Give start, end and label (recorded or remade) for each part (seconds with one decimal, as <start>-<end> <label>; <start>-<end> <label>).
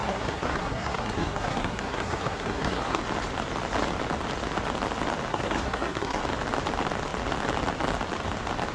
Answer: 0.0-3.0 remade; 3.0-5.3 recorded; 5.3-6.2 remade; 6.2-8.7 recorded